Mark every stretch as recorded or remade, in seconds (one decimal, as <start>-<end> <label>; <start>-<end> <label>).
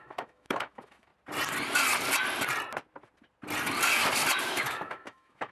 0.0-1.1 remade; 1.1-4.4 recorded; 4.4-5.5 remade